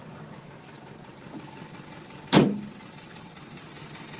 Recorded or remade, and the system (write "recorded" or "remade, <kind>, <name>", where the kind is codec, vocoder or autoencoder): recorded